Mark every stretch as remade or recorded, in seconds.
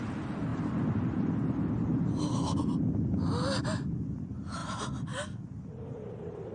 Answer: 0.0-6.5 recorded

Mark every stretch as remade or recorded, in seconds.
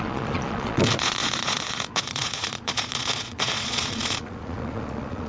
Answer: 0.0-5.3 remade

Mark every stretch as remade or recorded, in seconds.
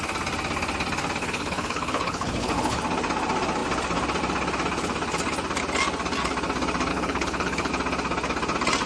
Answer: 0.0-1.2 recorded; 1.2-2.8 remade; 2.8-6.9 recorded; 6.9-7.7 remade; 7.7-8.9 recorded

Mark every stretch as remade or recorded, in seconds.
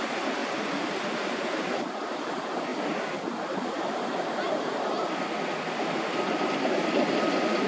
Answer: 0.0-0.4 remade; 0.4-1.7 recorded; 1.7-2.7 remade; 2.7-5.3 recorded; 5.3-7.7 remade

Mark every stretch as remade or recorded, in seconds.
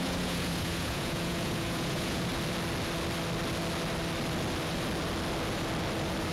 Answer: 0.0-2.3 remade; 2.3-6.3 recorded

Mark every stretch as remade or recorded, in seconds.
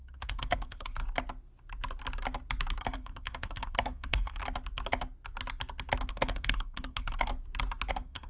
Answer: 0.0-1.0 remade; 1.0-2.8 recorded; 2.8-4.4 remade; 4.4-6.1 recorded; 6.1-7.3 remade; 7.3-7.9 recorded; 7.9-8.3 remade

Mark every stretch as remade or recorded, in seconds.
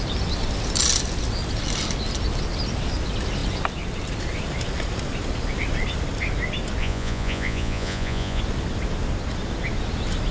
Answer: 0.0-6.8 recorded; 6.8-8.4 remade; 8.4-10.3 recorded